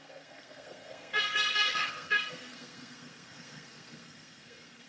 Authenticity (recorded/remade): remade